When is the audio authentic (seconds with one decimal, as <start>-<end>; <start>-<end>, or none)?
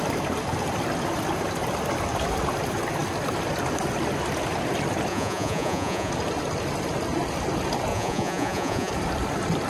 0.0-5.1; 6.1-7.9; 8.9-9.7